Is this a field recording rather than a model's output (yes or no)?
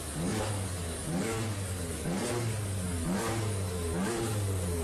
no